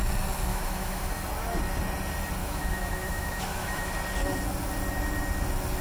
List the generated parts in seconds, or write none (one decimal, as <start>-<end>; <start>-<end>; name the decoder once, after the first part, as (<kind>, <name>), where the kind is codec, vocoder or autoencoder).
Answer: 0.5-1.1 (autoencoder, DAC-VAE); 2.4-3.9

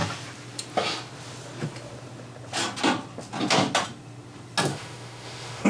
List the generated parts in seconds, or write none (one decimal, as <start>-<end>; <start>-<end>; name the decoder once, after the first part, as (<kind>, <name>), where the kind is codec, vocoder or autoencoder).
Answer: 4.7-5.7 (autoencoder, DAC-VAE)

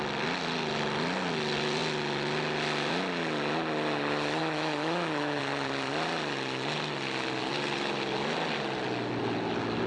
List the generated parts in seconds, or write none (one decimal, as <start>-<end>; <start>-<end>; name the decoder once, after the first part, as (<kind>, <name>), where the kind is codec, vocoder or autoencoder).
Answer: 4.4-5.4 (autoencoder, DAC-VAE)

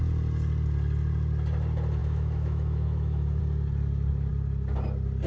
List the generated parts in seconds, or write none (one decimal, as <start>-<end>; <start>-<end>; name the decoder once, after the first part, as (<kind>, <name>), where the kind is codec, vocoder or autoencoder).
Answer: 2.0-3.4 (autoencoder, DAC-VAE)